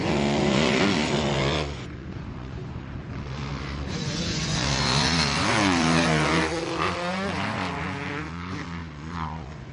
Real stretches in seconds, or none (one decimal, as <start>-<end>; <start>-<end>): none